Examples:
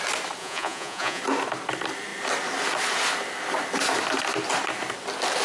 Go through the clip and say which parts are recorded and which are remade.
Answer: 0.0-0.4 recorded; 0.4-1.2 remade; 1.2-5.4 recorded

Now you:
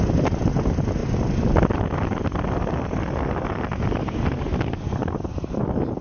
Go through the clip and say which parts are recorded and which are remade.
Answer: 0.0-6.0 recorded

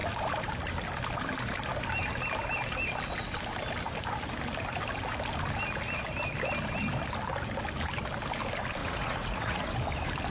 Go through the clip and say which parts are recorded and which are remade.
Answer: 0.0-8.8 recorded; 8.8-9.7 remade; 9.7-10.3 recorded

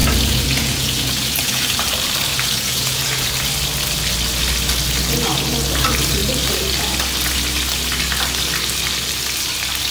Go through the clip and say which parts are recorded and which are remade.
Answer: 0.0-1.7 remade; 1.7-2.3 recorded; 2.3-3.3 remade; 3.3-9.9 recorded

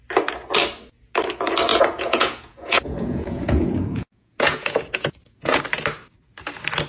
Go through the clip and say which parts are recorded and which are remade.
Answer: 0.0-1.7 recorded; 1.7-5.6 remade; 5.6-6.9 recorded

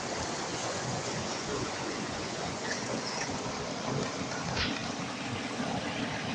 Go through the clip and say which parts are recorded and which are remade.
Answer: 0.0-0.5 recorded; 0.5-3.5 remade; 3.5-6.3 recorded

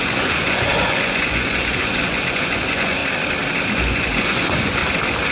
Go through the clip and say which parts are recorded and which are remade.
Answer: 0.0-3.0 remade; 3.0-3.7 recorded; 3.7-4.8 remade; 4.8-5.3 recorded